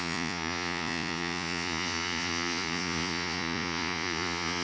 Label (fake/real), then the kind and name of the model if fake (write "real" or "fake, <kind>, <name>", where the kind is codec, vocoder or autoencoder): fake, vocoder, Vocos